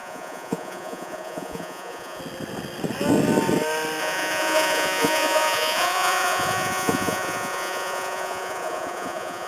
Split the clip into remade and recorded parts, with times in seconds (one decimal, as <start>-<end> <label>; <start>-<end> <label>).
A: 0.0-2.2 remade; 2.2-4.0 recorded; 4.0-9.5 remade